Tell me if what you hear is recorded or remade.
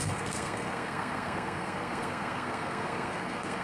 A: remade